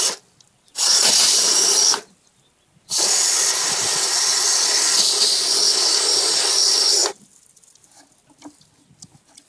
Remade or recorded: recorded